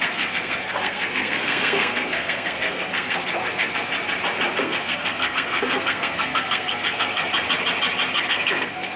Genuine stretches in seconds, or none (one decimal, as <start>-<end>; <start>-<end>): 3.9-4.6; 7.3-8.2